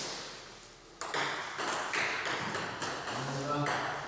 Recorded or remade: recorded